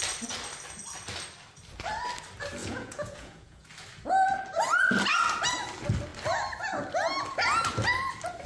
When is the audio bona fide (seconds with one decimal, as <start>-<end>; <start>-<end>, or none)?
0.0-2.6; 3.7-8.5